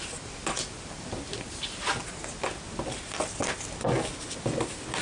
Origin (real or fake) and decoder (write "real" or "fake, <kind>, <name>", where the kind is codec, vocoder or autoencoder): real